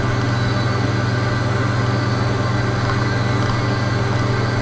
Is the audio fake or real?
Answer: real